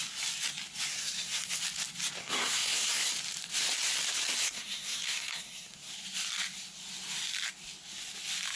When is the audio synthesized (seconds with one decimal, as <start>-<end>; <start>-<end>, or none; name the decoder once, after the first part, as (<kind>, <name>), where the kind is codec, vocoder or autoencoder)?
0.9-1.6 (codec, SNAC); 2.2-3.1; 4.4-5.9